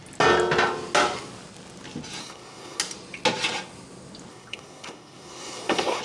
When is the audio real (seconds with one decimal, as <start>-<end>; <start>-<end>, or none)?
0.0-2.2; 2.8-4.3